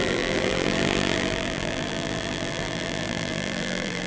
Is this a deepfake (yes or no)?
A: yes